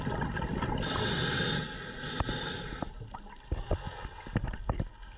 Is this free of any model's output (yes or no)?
yes